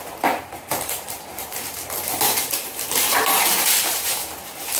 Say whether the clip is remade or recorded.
remade